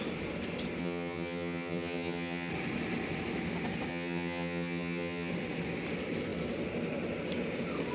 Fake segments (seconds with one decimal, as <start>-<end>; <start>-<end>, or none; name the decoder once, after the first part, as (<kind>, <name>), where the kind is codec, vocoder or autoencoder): 0.8-2.5 (vocoder, HiFi-GAN); 3.9-5.3